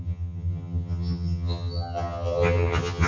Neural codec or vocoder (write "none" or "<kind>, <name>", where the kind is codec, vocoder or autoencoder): vocoder, HiFi-GAN